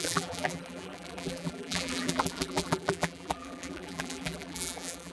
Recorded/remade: remade